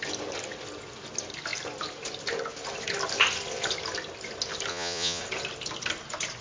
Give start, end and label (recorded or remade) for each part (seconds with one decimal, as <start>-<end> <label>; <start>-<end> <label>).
0.0-4.7 recorded; 4.7-5.2 remade; 5.2-6.4 recorded